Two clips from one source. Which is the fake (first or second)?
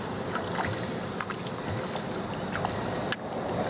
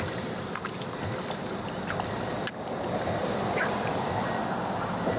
second